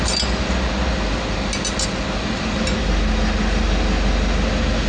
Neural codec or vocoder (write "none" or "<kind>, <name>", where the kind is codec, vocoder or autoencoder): none